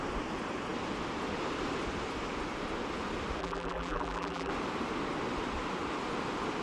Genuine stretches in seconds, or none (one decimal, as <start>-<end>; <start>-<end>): 0.0-3.4; 4.5-6.6